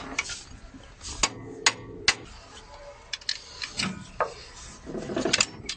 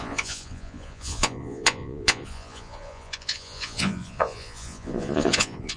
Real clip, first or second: first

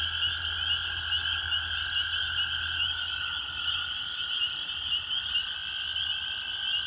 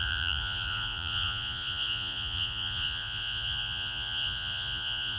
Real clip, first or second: first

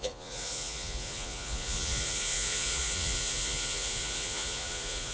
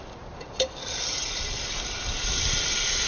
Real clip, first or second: second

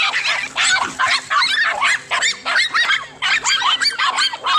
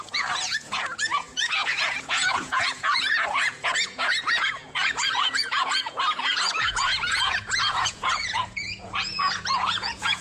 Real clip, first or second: first